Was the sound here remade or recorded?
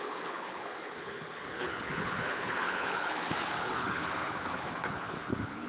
remade